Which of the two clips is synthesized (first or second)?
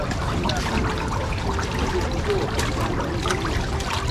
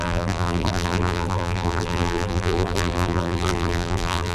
second